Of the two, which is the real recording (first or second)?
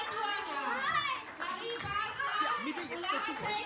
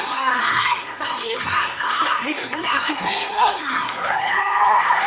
first